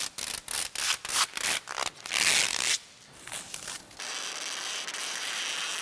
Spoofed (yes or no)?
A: no